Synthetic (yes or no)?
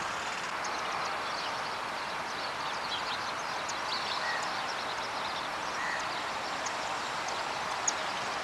no